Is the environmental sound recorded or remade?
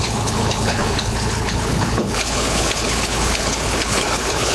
remade